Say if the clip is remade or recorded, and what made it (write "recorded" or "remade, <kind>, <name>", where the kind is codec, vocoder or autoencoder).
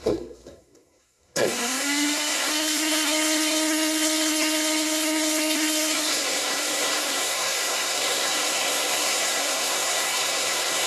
remade, codec, SNAC